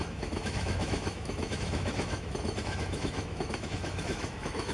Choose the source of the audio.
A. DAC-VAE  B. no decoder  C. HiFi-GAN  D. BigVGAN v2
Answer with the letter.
A